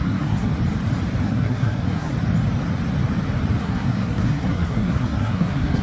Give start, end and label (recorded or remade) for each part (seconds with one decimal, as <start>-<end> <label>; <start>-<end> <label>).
0.0-0.5 remade; 0.5-1.2 recorded; 1.2-2.1 remade; 2.1-3.6 recorded; 3.6-5.8 remade